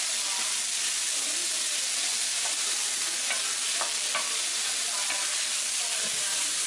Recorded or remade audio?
recorded